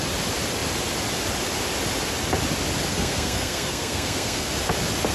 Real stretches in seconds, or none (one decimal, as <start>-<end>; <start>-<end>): 0.0-2.9; 4.5-5.1

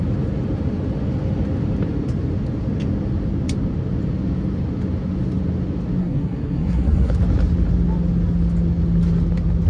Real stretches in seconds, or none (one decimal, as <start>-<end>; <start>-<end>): 0.0-6.0; 7.1-9.7